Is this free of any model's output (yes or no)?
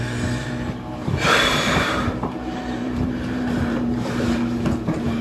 no